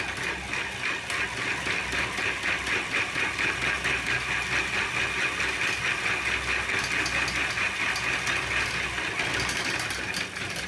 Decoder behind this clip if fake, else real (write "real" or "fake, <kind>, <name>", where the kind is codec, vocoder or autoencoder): real